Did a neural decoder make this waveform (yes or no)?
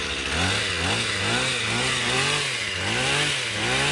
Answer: no